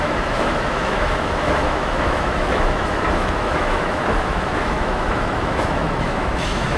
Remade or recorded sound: remade